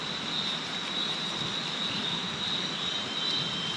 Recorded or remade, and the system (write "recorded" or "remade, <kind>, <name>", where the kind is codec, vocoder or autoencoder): recorded